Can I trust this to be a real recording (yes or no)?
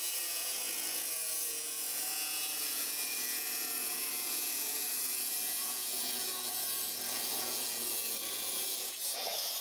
no